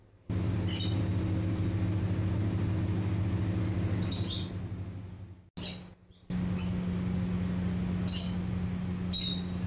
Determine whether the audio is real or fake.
real